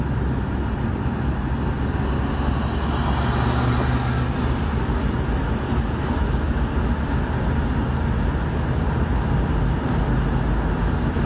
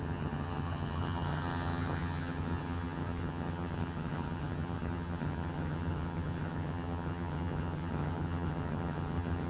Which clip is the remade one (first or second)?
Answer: second